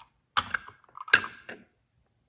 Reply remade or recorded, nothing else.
recorded